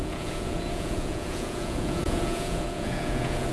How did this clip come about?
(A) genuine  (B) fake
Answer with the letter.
B